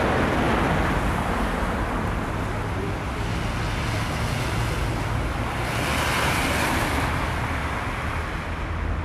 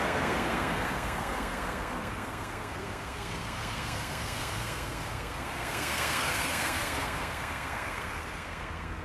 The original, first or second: first